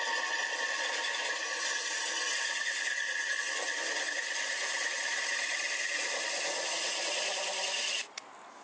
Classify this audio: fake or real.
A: real